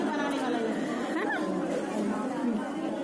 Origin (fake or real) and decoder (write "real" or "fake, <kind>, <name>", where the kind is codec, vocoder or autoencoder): real